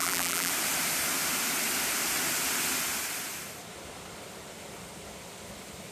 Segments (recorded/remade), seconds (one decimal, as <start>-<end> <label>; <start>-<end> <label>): 0.0-0.5 remade; 0.5-5.9 recorded